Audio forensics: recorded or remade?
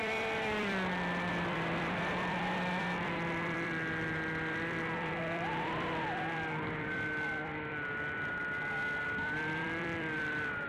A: remade